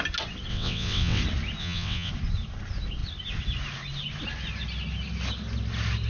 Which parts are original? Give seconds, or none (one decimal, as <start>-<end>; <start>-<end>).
0.0-0.5; 1.2-1.6; 2.1-6.1